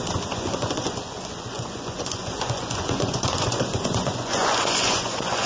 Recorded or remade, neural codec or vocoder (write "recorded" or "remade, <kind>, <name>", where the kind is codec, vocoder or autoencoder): remade, vocoder, Vocos